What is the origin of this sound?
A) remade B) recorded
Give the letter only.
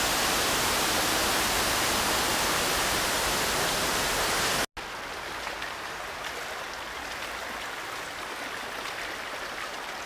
B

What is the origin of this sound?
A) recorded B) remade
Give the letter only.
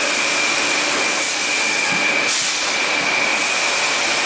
A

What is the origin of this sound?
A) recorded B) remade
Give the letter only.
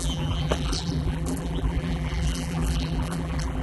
B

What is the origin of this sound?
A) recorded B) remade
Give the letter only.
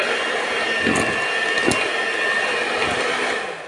A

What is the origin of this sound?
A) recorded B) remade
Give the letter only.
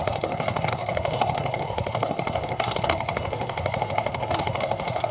B